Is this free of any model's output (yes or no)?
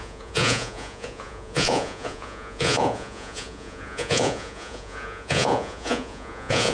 no